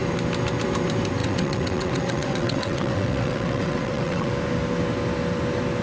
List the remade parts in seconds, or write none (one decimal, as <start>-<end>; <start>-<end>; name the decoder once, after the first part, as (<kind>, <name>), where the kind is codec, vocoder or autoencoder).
1.2-4.3 (vocoder, WaveNeXt)